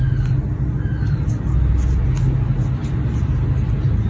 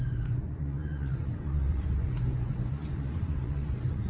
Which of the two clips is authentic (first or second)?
first